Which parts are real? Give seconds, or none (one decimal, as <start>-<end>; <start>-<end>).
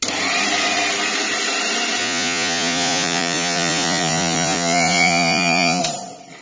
0.0-2.0; 5.8-6.4